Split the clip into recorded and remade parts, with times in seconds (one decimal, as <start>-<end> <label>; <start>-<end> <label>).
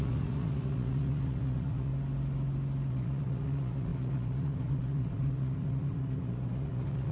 0.0-1.9 remade; 1.9-2.9 recorded; 2.9-7.1 remade